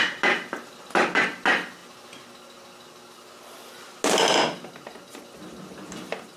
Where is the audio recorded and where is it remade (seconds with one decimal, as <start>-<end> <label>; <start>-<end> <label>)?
0.0-6.4 recorded